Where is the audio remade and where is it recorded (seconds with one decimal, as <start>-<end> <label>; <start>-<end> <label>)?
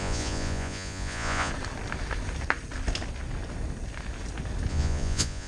0.0-1.5 remade; 1.5-4.7 recorded; 4.7-5.5 remade